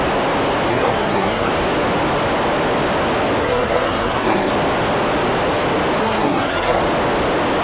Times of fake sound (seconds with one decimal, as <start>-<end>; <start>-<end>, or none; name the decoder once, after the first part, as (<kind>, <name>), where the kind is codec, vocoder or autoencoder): 0.7-1.5 (codec, SNAC); 3.4-4.5; 6.0-6.8